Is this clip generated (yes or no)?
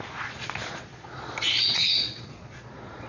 yes